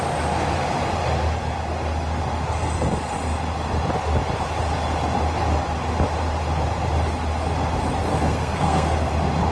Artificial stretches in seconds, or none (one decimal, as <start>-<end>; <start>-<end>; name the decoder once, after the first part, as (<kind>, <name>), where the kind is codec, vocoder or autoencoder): 8.1-9.1 (codec, SNAC)